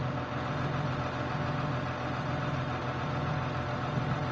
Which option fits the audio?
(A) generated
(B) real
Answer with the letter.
B